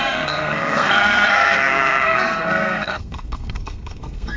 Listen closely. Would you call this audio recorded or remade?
remade